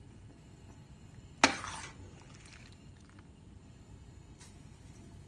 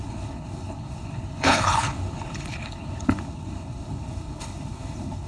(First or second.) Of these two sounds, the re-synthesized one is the second